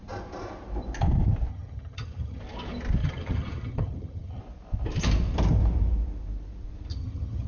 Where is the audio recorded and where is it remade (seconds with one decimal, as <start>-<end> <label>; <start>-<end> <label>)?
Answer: 0.0-1.5 recorded; 1.5-2.4 remade; 2.4-3.0 recorded; 3.0-4.4 remade; 4.4-6.9 recorded; 6.9-7.5 remade